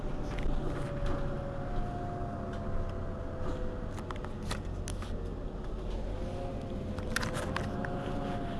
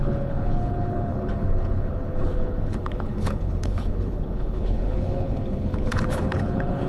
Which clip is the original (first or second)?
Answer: first